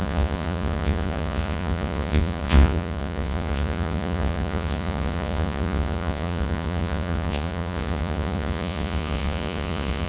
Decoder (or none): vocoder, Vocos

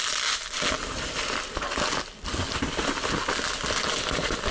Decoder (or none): none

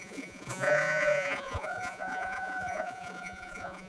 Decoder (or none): vocoder, Vocos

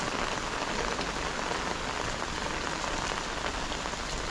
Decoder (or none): none